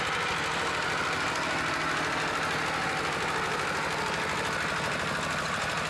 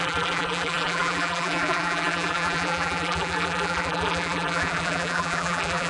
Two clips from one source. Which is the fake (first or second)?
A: second